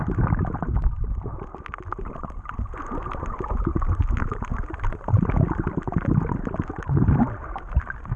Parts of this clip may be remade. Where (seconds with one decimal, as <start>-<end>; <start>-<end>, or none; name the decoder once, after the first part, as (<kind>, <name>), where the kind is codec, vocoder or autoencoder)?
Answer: none